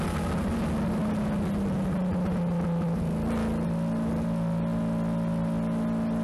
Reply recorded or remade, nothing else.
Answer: recorded